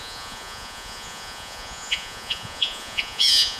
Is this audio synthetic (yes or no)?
yes